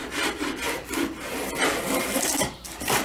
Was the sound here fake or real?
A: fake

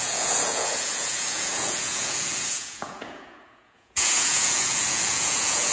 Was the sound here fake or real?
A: fake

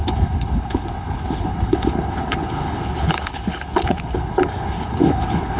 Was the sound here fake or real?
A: fake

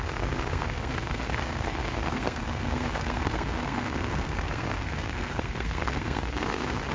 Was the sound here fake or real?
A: fake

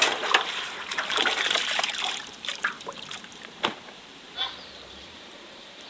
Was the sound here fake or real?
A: fake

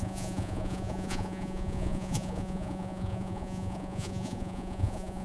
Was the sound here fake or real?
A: fake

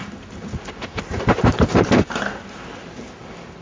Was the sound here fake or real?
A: real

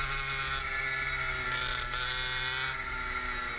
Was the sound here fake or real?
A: real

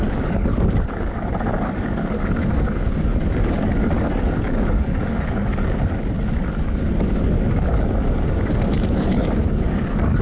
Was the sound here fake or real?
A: fake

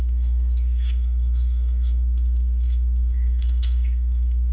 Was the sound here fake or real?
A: fake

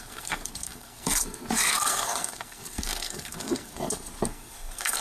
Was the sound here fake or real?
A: fake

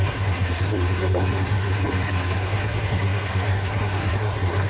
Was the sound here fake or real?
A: fake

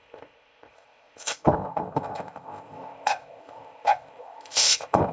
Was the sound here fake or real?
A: fake